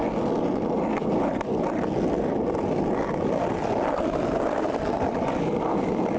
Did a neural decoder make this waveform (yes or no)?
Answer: no